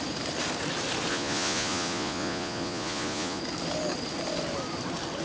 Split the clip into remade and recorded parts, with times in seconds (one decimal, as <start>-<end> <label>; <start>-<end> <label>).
0.0-1.1 recorded; 1.1-3.4 remade; 3.4-5.2 recorded